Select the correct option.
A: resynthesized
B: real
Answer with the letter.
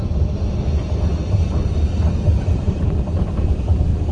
B